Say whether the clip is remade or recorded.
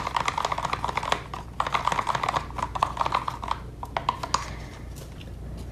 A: recorded